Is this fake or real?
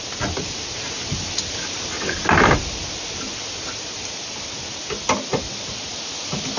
real